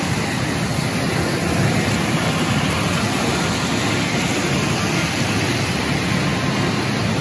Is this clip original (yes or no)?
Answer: yes